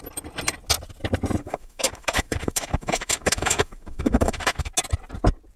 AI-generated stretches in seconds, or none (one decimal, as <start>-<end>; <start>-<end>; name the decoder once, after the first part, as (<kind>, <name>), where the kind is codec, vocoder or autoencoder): 1.4-4.7 (autoencoder, DAC-VAE)